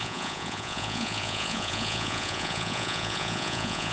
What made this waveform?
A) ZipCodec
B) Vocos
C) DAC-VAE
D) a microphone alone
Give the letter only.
B